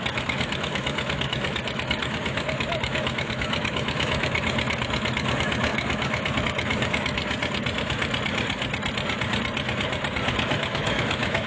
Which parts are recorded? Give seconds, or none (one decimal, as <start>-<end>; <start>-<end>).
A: 7.2-10.3